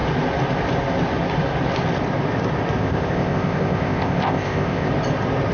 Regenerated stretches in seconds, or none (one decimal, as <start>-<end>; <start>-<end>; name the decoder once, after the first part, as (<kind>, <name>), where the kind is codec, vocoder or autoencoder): 2.8-4.9 (codec, ZipCodec)